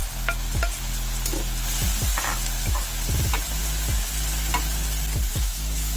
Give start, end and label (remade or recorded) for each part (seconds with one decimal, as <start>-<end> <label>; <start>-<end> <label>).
0.0-5.3 recorded; 5.3-6.0 remade